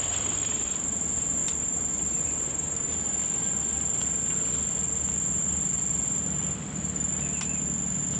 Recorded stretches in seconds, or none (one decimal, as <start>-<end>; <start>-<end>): 3.2-8.2